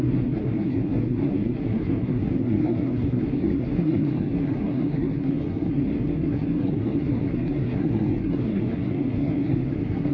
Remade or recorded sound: remade